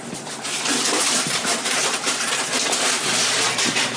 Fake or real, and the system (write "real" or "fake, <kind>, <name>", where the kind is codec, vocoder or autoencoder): fake, vocoder, BigVGAN v2